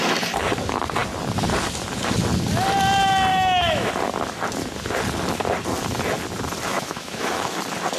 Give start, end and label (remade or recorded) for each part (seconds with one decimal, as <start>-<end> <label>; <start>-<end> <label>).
0.0-3.3 recorded; 3.3-3.9 remade; 3.9-6.7 recorded; 6.7-7.6 remade; 7.6-8.0 recorded